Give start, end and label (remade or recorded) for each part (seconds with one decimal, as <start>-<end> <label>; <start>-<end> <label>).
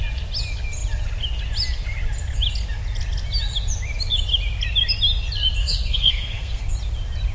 0.0-5.6 recorded; 5.6-6.6 remade; 6.6-7.3 recorded